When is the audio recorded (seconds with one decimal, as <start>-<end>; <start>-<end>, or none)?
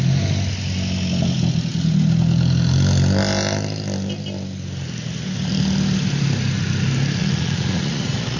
0.0-7.2